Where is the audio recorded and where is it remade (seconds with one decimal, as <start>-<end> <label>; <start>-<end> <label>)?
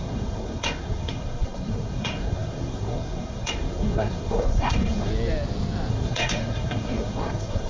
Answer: 0.0-5.1 remade; 5.1-5.9 recorded; 5.9-7.7 remade